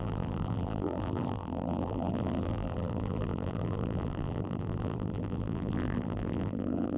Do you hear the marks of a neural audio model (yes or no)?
yes